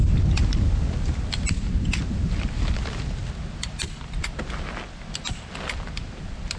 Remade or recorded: recorded